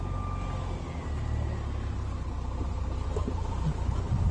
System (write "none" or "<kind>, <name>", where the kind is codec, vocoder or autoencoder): none